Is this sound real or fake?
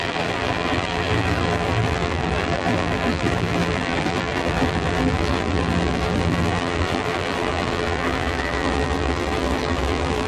fake